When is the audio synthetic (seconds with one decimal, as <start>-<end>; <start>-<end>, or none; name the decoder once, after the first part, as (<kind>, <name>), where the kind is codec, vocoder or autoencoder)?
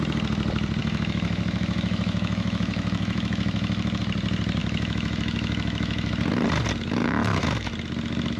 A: 0.8-4.0 (autoencoder, DAC-VAE); 4.6-6.1; 7.0-7.7